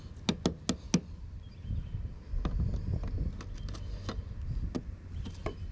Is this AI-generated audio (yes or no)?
no